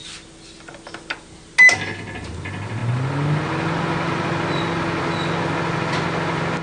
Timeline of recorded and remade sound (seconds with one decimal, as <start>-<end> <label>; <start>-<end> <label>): 0.0-6.6 recorded